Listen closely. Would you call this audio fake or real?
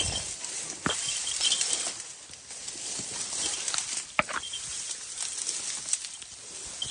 real